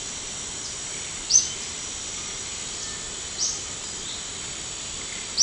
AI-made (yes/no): no